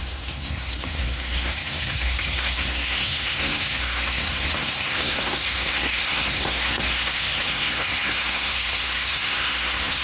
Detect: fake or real fake